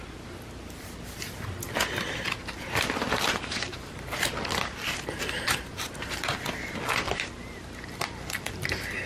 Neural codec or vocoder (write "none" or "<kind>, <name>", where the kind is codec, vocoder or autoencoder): vocoder, BigVGAN v2